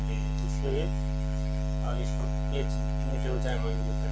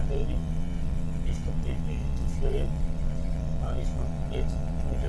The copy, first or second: second